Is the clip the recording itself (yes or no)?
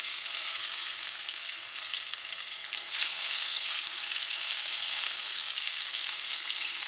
no